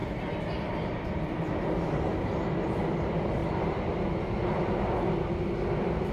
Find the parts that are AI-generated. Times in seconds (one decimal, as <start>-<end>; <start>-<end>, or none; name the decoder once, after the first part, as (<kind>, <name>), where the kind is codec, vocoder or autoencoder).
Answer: none

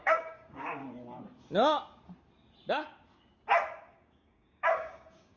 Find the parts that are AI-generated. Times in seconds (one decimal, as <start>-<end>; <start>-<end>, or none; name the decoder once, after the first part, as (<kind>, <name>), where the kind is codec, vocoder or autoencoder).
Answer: 0.0-0.8 (codec, DAC); 3.9-5.4